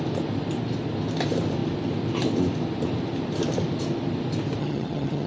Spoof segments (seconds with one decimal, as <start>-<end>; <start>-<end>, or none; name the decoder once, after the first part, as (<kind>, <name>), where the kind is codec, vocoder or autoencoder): 4.6-5.3 (vocoder, HiFi-GAN)